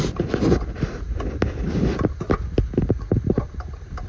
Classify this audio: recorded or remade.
recorded